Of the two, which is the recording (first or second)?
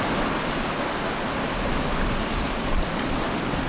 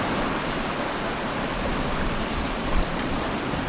first